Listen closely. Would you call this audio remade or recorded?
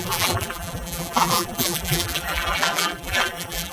remade